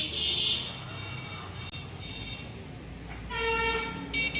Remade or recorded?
recorded